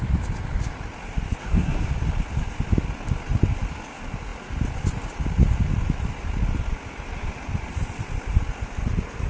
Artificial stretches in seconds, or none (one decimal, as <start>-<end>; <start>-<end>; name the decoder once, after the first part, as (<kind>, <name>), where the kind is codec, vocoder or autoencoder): 1.4-1.9 (codec, SNAC)